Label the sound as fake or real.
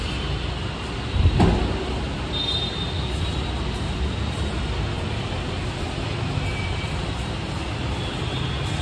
real